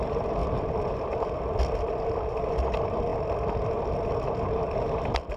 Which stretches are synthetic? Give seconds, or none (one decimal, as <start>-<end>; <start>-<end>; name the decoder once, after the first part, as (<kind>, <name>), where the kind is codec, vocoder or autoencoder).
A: none